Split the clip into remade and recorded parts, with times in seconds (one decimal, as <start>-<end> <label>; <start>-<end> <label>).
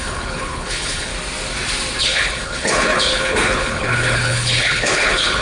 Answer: 0.0-1.1 remade; 1.1-2.0 recorded; 2.0-5.4 remade